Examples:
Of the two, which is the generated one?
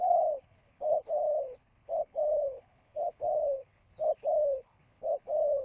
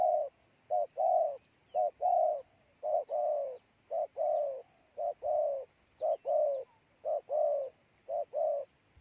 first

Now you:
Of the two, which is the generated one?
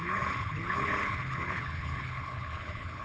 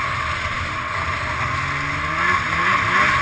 first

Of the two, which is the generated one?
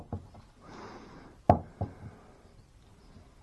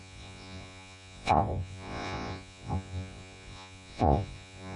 second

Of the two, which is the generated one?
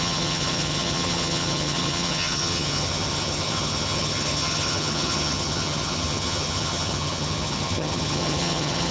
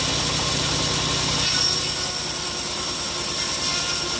first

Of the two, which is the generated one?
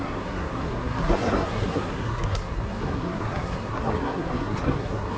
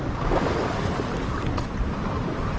first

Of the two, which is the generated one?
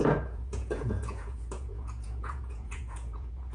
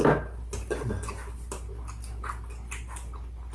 first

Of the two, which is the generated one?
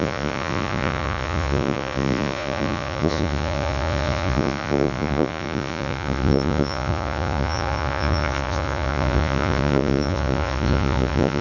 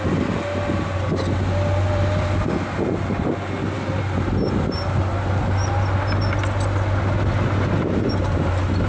first